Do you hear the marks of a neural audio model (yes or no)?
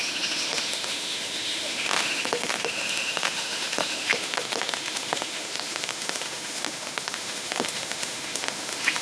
yes